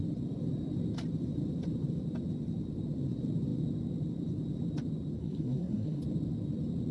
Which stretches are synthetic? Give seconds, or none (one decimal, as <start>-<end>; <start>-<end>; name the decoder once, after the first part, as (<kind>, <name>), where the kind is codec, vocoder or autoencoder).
5.2-6.0 (codec, SNAC)